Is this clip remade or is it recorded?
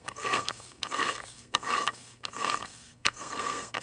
remade